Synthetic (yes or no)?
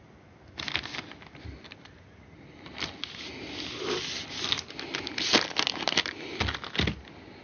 no